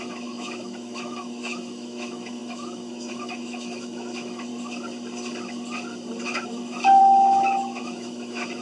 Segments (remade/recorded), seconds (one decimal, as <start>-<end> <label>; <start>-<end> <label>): 0.0-4.5 remade; 4.5-6.2 recorded; 6.2-7.0 remade; 7.0-7.8 recorded; 7.8-8.6 remade